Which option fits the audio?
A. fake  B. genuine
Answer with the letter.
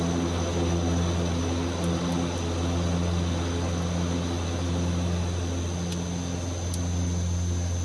B